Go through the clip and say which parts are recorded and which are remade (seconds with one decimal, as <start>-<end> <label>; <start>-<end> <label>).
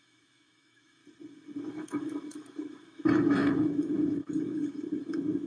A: 0.0-1.0 remade; 1.0-1.7 recorded; 1.7-5.5 remade